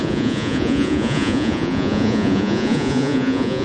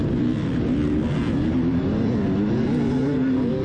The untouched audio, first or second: second